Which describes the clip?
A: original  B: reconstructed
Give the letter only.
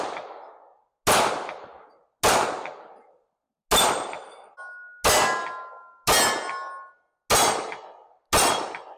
A